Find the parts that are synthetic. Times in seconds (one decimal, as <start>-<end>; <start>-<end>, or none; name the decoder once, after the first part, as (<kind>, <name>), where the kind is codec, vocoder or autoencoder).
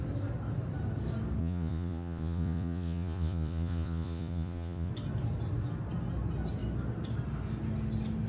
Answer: 1.4-4.9 (vocoder, Vocos)